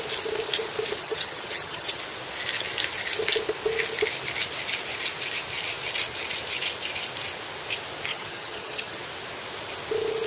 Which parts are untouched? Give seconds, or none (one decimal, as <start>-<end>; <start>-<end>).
0.0-1.0; 2.0-8.1; 9.0-10.3